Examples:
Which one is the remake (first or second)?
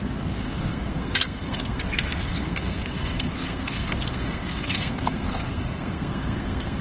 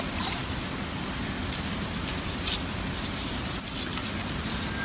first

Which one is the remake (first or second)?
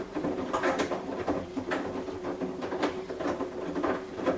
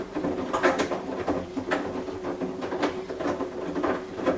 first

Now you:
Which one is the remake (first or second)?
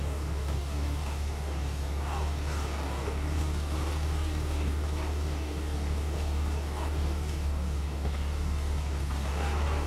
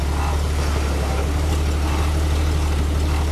first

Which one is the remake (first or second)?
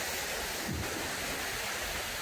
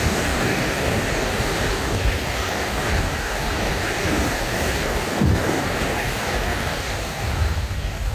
second